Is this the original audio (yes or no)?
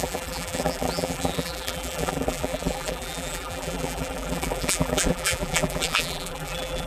no